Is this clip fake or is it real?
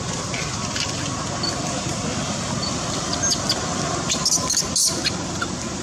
real